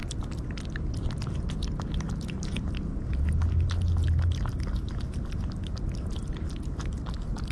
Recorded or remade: recorded